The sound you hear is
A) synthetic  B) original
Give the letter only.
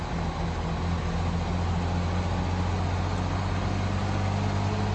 B